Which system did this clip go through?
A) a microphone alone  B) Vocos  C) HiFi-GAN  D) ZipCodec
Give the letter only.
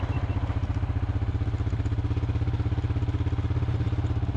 A